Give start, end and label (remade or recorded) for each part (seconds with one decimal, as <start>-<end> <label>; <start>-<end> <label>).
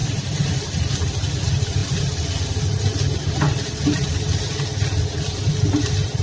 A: 0.0-0.5 remade; 0.5-6.2 recorded